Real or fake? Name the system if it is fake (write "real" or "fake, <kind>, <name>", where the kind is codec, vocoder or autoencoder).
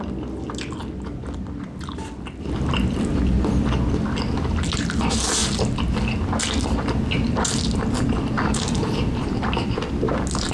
real